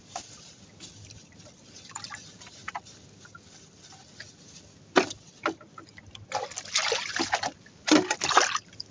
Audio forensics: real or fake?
fake